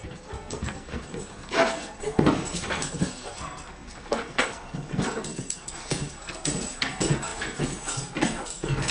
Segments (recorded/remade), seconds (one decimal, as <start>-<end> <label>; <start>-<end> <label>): 0.0-8.9 remade